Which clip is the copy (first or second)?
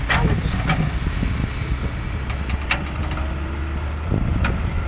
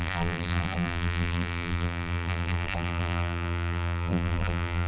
second